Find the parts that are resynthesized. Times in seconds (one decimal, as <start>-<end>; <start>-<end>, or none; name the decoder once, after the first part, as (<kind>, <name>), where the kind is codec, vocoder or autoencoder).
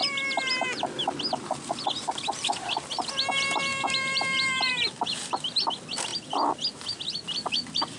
3.7-4.7 (vocoder, BigVGAN v2)